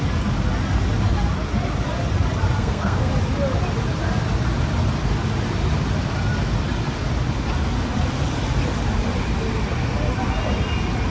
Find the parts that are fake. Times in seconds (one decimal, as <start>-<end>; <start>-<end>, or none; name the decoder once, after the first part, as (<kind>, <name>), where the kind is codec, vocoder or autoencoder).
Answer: 2.6-3.1 (codec, SNAC)